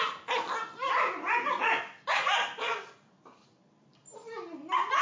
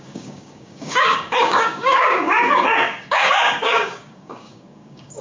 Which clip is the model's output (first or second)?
second